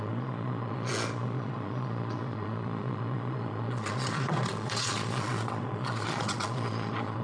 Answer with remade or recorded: remade